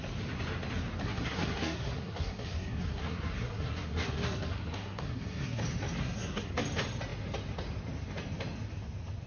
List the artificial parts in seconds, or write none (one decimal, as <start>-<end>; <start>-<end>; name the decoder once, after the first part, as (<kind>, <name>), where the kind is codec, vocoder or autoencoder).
1.0-5.6 (codec, SNAC); 6.0-6.6